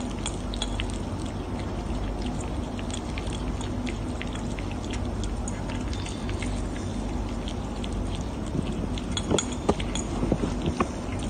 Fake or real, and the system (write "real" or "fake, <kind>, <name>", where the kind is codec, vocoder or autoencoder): real